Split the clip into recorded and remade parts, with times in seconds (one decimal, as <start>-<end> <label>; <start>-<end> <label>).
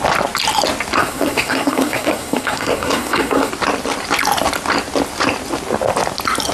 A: 0.0-1.0 recorded; 1.0-3.5 remade; 3.5-6.5 recorded